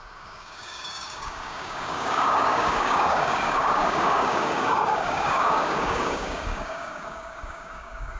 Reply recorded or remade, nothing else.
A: remade